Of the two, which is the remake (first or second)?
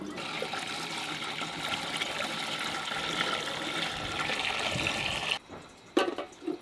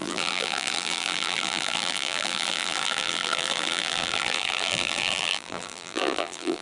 second